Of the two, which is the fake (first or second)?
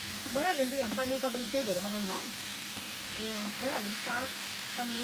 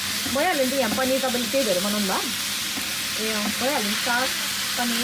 first